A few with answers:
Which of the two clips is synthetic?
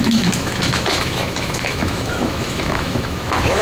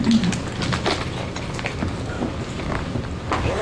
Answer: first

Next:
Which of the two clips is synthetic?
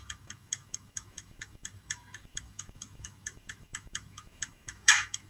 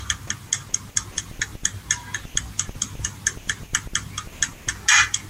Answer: first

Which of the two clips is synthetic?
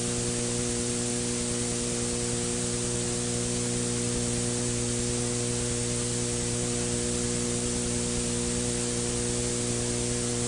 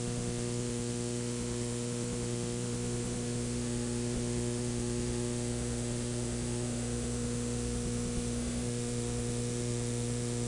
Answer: second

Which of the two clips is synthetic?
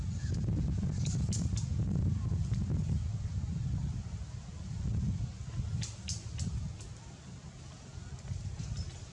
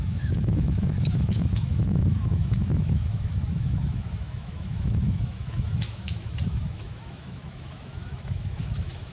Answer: second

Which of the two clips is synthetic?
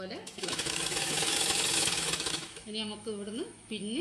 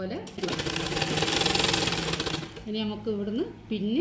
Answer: first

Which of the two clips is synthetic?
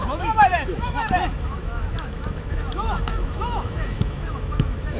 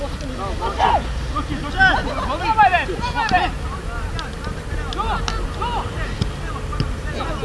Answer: first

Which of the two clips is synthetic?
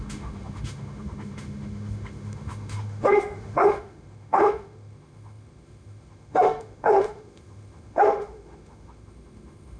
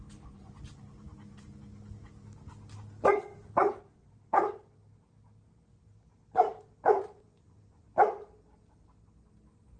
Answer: first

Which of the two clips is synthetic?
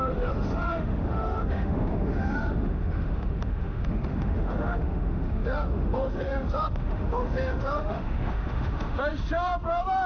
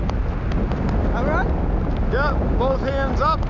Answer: first